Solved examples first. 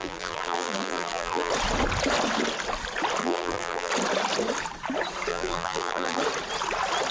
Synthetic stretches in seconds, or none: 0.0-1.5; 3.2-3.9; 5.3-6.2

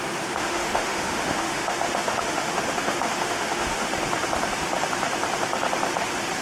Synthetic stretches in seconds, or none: 0.0-3.9

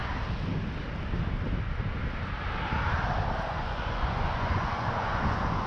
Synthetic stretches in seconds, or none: 3.4-5.7

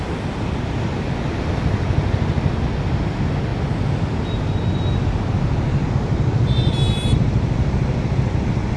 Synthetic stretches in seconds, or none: none